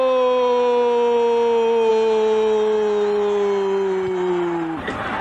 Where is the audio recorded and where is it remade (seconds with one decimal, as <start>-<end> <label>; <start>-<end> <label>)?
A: 0.0-5.2 recorded